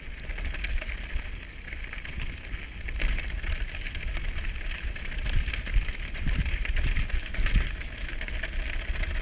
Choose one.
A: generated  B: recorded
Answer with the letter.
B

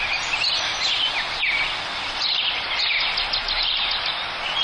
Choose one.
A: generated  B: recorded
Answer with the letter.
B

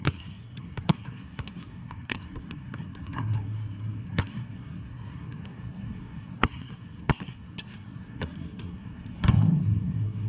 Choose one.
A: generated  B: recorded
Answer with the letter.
A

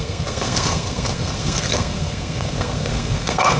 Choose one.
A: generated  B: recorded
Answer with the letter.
A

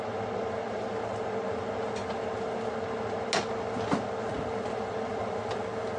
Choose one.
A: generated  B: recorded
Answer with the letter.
B